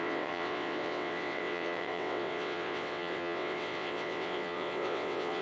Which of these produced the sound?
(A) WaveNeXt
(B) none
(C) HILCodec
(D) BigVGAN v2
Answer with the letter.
A